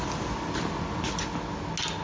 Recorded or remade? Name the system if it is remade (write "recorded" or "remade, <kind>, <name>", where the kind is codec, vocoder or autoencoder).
recorded